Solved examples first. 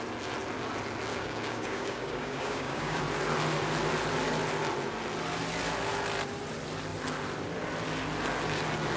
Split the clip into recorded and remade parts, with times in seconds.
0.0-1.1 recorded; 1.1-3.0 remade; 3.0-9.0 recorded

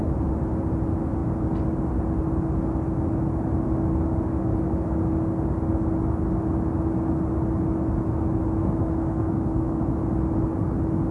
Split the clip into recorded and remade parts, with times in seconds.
0.0-8.6 recorded; 8.6-9.8 remade; 9.8-11.1 recorded

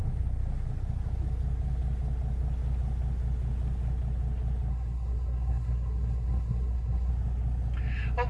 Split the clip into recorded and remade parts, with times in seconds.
0.0-4.7 recorded; 4.7-7.1 remade; 7.1-8.3 recorded

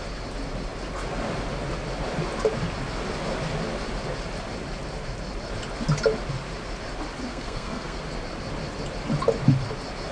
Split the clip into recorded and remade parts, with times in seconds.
0.0-7.3 recorded; 7.3-8.0 remade; 8.0-10.1 recorded

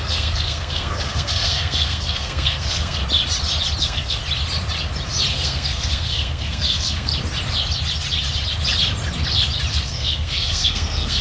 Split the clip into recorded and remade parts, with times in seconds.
0.0-3.0 remade; 3.0-3.8 recorded; 3.8-4.2 remade; 4.2-5.3 recorded; 5.3-7.1 remade; 7.1-9.7 recorded; 9.7-11.2 remade

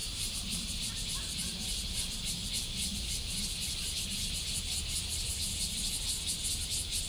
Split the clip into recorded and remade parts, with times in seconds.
0.0-0.9 remade; 0.9-7.1 recorded

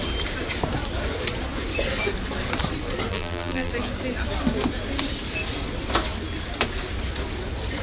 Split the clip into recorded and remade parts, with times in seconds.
0.0-3.1 recorded; 3.1-3.7 remade; 3.7-7.8 recorded